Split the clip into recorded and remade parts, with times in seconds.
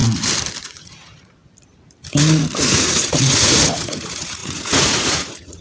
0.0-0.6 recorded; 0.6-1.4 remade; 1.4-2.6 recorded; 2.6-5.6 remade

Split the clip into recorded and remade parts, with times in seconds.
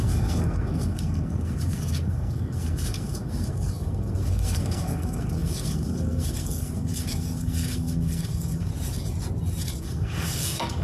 0.0-8.7 remade; 8.7-9.8 recorded; 9.8-10.8 remade